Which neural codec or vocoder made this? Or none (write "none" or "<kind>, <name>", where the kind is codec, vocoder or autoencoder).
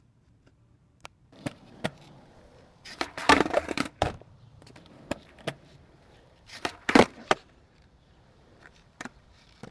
vocoder, BigVGAN v2